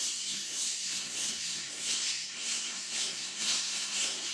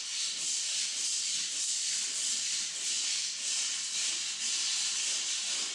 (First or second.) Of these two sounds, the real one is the second